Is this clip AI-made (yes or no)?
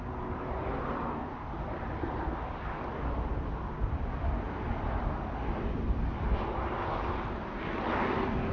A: no